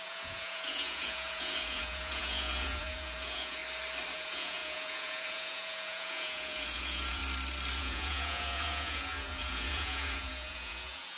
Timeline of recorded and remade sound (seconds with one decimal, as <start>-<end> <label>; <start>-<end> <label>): 0.0-3.6 remade; 3.6-4.1 recorded; 4.1-7.2 remade; 7.2-7.8 recorded; 7.8-11.2 remade